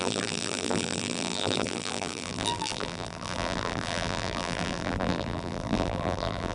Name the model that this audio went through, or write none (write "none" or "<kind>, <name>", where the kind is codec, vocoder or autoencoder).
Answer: vocoder, BigVGAN v2